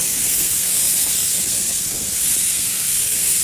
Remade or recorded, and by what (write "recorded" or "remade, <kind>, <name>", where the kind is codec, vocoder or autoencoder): remade, codec, SNAC